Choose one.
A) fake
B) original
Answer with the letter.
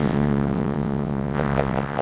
A